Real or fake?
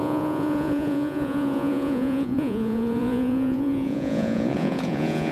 fake